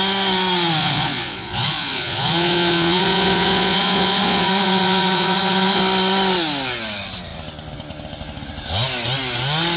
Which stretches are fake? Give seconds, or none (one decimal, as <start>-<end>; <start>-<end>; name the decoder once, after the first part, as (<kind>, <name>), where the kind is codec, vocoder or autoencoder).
0.8-5.8 (vocoder, Vocos)